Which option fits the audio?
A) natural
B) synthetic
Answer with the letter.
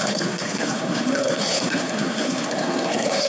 B